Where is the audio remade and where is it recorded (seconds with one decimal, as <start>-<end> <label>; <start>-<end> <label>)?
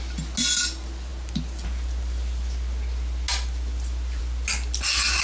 0.0-5.2 recorded